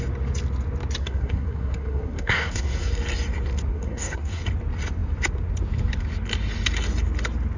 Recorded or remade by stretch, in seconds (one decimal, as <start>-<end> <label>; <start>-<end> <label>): 0.0-1.0 recorded; 1.0-2.9 remade; 2.9-3.7 recorded; 3.7-4.4 remade; 4.4-7.6 recorded